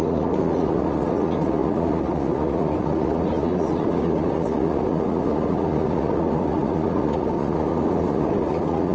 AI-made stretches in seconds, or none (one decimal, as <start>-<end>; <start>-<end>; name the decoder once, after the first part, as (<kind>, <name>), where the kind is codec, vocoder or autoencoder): 0.0-8.9 (vocoder, Vocos)